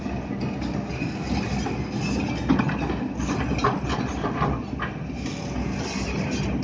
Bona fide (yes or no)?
yes